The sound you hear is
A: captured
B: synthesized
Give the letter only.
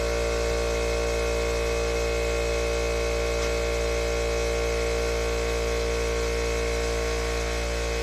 A